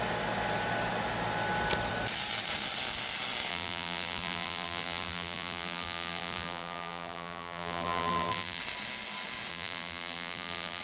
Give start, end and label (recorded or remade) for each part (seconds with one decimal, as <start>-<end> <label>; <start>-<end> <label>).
0.0-3.5 recorded; 3.5-8.6 remade; 8.6-9.5 recorded; 9.5-10.8 remade